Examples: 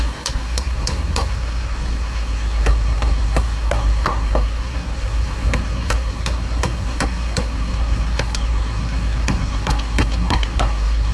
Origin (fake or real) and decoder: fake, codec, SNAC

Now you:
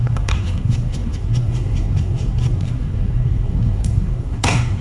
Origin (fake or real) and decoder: fake, codec, SNAC